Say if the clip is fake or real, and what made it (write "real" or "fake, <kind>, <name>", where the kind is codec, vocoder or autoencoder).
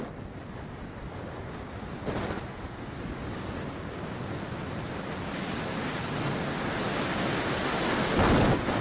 real